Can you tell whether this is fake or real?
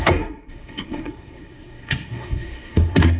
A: fake